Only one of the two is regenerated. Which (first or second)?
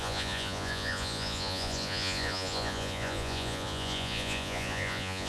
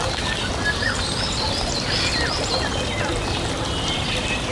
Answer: first